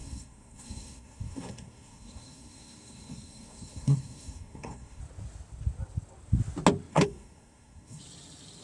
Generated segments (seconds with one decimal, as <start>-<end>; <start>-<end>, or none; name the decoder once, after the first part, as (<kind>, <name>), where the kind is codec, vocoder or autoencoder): 0.0-5.0 (codec, SNAC); 6.9-8.0